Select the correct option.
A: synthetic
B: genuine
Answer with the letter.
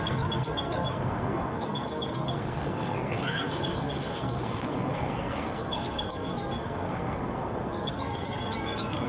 A